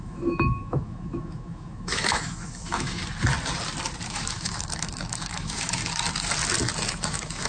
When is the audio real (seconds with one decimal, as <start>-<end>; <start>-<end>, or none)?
3.0-4.1; 5.8-6.9